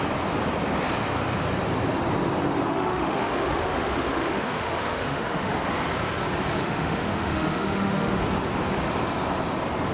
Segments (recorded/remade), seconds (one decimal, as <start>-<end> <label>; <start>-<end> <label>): 0.0-2.7 recorded; 2.7-5.5 remade; 5.5-6.6 recorded; 6.6-8.2 remade; 8.2-9.9 recorded